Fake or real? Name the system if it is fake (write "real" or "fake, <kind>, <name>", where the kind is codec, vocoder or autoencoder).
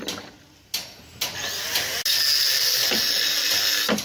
real